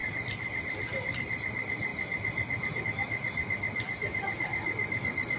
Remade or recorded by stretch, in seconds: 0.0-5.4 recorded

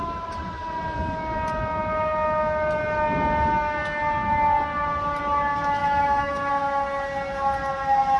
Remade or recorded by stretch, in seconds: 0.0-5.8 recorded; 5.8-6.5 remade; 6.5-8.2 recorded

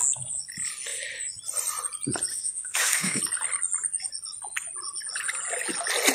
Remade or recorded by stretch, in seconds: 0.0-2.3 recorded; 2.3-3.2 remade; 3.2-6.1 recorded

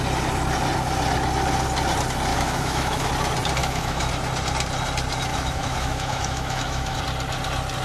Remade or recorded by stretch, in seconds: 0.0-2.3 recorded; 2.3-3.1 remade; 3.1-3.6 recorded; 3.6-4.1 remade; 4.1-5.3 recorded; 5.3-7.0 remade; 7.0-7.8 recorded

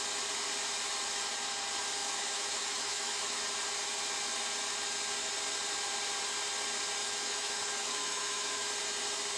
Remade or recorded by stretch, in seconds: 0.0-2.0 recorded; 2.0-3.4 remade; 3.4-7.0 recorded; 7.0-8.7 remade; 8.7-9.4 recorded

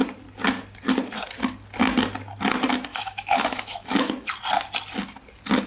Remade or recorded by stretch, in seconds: 0.0-2.9 recorded; 2.9-4.1 remade; 4.1-5.7 recorded

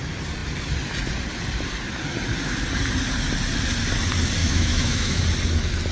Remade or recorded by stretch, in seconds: 0.0-4.4 recorded; 4.4-5.2 remade; 5.2-5.9 recorded